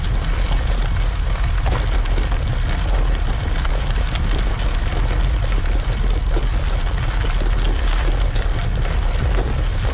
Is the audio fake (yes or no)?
no